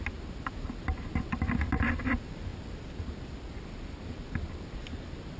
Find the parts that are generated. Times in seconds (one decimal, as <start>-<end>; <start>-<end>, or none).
none